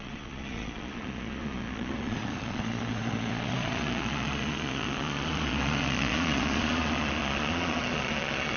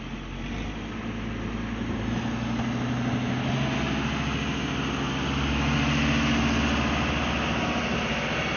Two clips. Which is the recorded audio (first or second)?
second